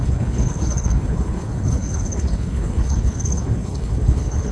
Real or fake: fake